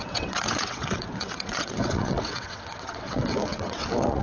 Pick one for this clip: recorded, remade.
remade